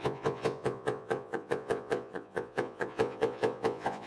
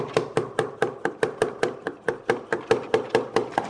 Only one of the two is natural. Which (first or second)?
second